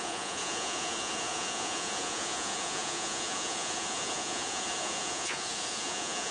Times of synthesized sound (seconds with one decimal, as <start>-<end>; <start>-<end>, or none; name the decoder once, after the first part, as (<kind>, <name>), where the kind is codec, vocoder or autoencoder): 0.0-6.3 (vocoder, Vocos)